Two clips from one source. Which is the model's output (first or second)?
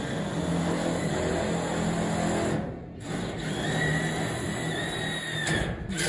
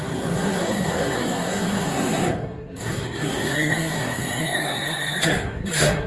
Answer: second